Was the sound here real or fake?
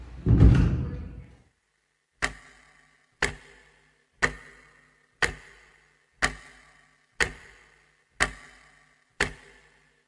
real